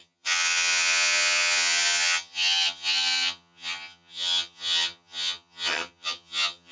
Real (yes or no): no